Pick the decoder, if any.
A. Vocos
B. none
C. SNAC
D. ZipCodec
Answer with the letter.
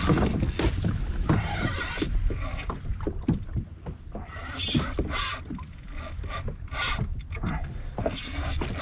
B